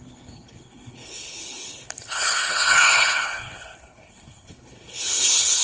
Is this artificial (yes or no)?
yes